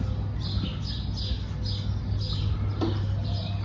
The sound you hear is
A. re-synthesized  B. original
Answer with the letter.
B